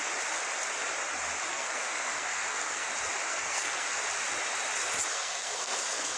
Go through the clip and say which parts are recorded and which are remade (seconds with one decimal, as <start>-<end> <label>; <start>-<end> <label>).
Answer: 0.0-1.5 recorded; 1.5-2.9 remade; 2.9-3.3 recorded; 3.3-4.0 remade; 4.0-5.1 recorded; 5.1-6.2 remade

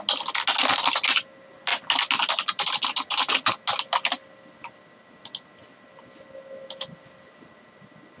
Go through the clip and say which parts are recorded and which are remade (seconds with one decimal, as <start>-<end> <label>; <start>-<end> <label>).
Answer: 0.0-8.2 recorded

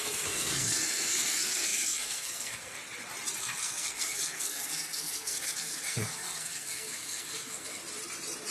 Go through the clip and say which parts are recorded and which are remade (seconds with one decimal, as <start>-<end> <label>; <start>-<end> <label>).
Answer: 0.0-2.8 remade; 2.8-3.4 recorded; 3.4-7.8 remade; 7.8-8.5 recorded